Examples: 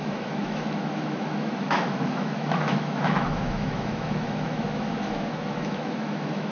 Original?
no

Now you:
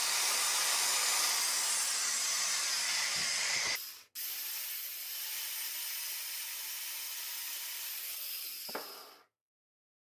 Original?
yes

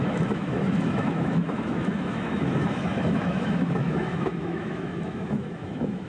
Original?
no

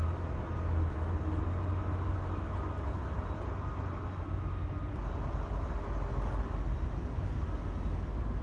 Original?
yes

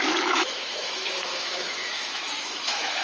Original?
no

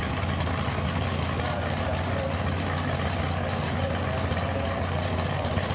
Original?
yes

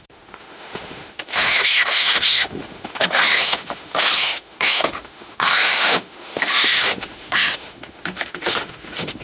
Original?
no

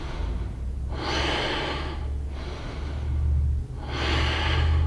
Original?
yes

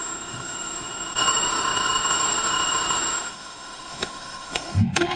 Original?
no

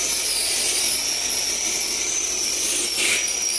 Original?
yes